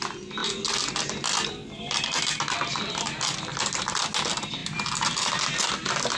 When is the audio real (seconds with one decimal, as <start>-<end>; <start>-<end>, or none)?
0.0-6.2